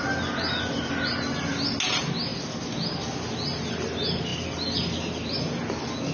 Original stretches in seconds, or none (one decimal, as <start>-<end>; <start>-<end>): 0.0-6.1